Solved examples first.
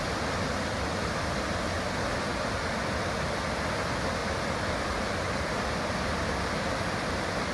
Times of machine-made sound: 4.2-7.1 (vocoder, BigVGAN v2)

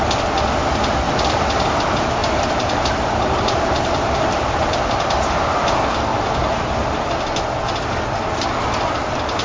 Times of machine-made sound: 2.2-4.4 (vocoder, BigVGAN v2); 6.1-7.1

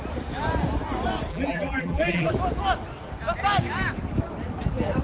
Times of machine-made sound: 1.3-2.3 (vocoder, BigVGAN v2)

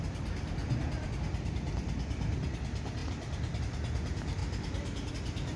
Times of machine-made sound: 0.6-1.1 (vocoder, BigVGAN v2); 3.0-3.6

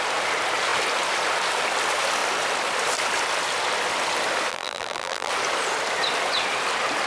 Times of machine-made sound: 4.5-5.3 (vocoder, BigVGAN v2)

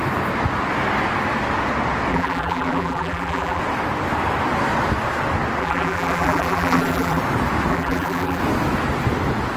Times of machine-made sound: 2.1-3.6 (vocoder, BigVGAN v2); 5.6-7.2; 7.7-8.4